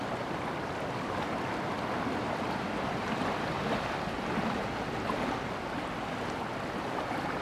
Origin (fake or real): real